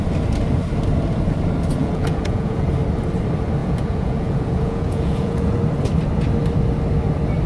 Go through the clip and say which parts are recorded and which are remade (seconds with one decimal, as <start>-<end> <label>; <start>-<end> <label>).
0.0-1.8 recorded; 1.8-2.7 remade; 2.7-3.6 recorded; 3.6-5.6 remade; 5.6-7.5 recorded